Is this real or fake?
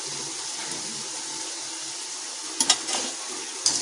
real